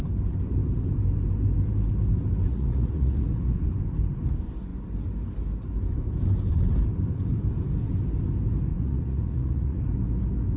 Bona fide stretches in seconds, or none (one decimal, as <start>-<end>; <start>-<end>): 0.0-2.5; 3.7-8.7; 9.8-10.6